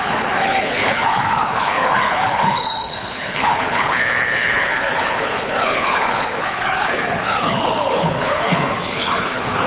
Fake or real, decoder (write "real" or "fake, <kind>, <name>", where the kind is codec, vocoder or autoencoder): fake, codec, HILCodec